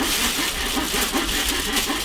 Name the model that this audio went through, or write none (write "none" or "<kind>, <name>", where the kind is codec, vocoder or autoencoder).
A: none